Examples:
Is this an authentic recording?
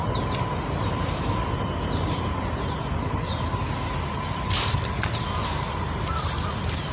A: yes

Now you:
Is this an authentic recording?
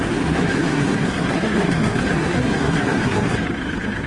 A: no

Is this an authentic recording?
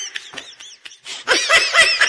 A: yes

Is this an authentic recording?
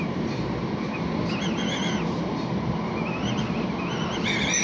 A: yes